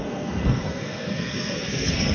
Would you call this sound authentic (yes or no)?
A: no